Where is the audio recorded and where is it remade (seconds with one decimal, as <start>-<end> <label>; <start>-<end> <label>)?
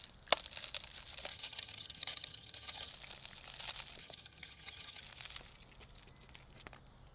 0.0-1.3 recorded; 1.3-2.9 remade; 2.9-4.0 recorded; 4.0-5.0 remade; 5.0-7.1 recorded